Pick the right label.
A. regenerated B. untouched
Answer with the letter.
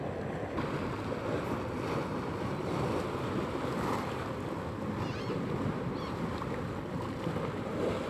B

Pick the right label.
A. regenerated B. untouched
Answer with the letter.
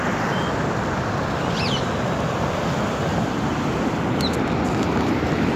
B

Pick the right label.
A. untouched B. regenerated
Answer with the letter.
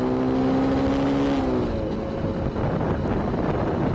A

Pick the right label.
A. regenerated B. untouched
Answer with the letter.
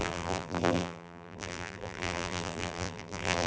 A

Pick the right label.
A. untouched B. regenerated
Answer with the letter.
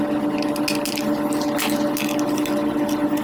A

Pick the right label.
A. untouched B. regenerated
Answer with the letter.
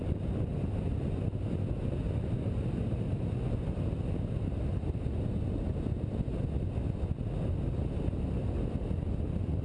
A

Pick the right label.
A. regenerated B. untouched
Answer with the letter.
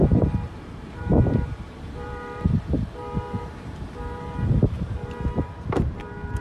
A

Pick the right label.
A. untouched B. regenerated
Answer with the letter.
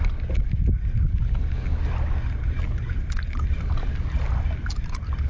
A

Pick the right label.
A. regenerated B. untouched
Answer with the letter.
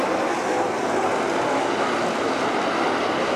B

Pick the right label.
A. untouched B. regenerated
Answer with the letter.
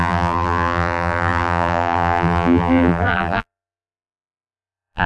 B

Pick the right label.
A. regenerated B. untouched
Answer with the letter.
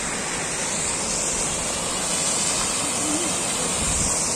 B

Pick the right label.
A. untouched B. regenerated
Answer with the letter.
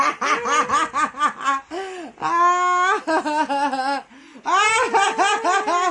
A